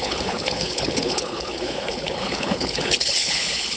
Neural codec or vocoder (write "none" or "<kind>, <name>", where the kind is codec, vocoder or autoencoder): codec, HILCodec